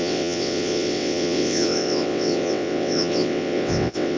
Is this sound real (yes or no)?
no